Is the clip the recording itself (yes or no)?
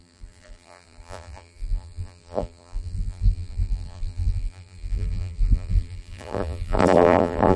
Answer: no